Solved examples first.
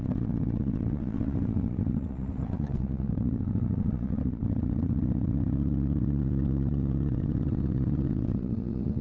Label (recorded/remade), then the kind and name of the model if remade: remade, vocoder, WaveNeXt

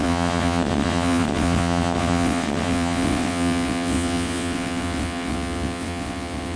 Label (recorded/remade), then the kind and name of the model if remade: remade, vocoder, WaveNeXt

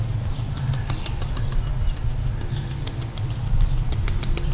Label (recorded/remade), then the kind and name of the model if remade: recorded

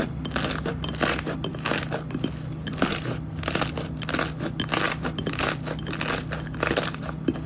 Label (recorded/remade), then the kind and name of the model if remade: recorded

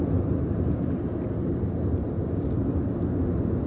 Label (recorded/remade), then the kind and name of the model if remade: recorded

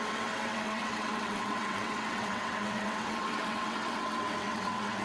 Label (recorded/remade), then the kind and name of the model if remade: remade, vocoder, WaveNeXt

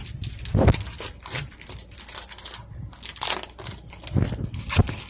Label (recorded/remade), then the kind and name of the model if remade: recorded